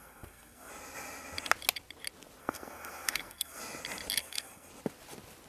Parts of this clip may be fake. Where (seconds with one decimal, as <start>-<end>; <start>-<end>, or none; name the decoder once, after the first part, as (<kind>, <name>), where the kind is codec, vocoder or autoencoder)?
0.0-0.7 (codec, SNAC); 2.4-3.6; 4.2-4.7